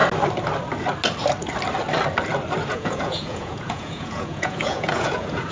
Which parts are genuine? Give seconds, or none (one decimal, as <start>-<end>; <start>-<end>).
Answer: 0.0-2.7